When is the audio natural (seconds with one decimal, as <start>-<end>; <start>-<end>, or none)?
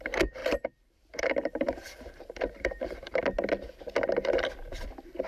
0.0-0.4; 3.2-5.3